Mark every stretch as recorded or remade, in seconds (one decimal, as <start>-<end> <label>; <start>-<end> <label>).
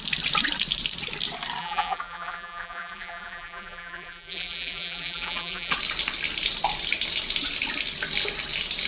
0.0-1.6 recorded; 1.6-5.7 remade; 5.7-8.9 recorded